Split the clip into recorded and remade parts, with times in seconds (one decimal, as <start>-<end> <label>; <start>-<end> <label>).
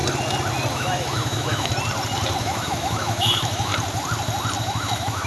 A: 0.0-0.7 recorded; 0.7-1.7 remade; 1.7-2.4 recorded; 2.4-3.7 remade; 3.7-4.6 recorded; 4.6-5.3 remade